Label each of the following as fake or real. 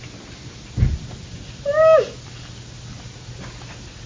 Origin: real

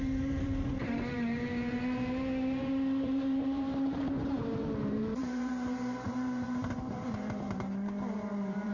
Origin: fake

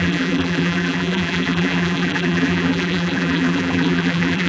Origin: fake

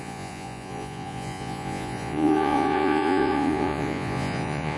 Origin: fake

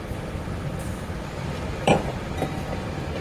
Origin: fake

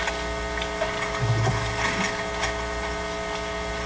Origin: real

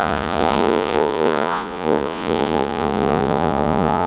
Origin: fake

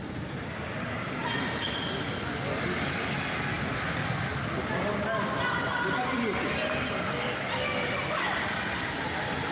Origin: real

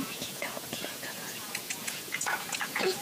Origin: fake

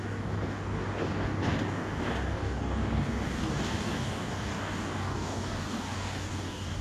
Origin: fake